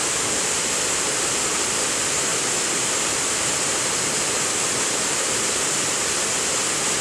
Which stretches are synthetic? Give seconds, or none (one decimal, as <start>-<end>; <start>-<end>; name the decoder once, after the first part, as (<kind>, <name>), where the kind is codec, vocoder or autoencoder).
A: 0.0-1.2 (vocoder, BigVGAN v2); 2.3-3.9